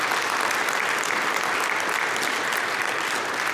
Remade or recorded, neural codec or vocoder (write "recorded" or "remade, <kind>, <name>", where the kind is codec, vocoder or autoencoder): recorded